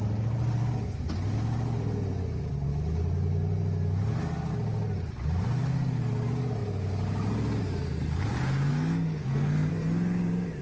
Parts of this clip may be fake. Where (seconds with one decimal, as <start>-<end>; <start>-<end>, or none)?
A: 8.7-9.7